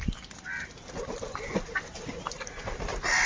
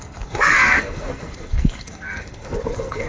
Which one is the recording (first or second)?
first